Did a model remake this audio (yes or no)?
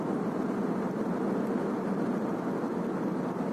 no